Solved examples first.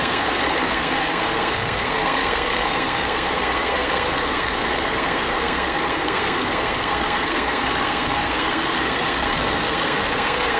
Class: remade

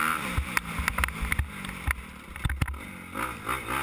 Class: recorded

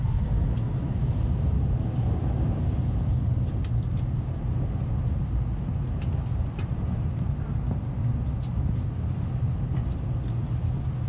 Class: recorded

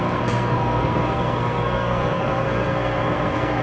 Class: remade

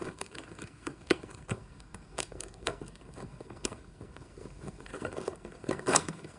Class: remade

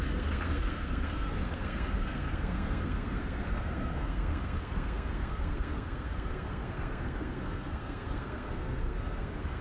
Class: remade